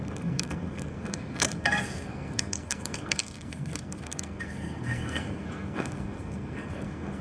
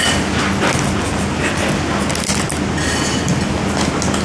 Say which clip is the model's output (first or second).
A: first